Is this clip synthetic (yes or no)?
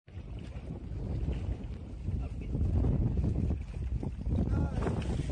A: no